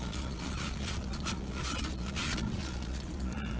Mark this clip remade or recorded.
remade